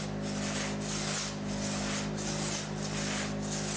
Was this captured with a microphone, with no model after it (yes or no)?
yes